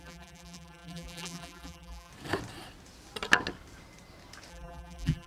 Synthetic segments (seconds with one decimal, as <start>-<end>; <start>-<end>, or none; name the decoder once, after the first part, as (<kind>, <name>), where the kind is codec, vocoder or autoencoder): 0.0-2.1 (vocoder, BigVGAN v2); 4.5-5.3